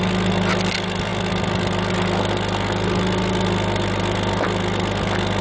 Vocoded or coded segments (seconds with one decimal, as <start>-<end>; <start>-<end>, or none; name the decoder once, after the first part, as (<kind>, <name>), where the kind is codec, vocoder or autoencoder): none